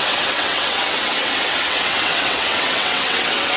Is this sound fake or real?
fake